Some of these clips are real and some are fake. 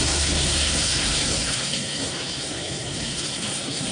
fake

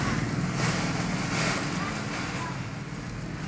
real